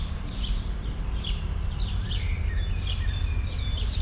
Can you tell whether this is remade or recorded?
remade